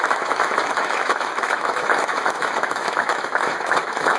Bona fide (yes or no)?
no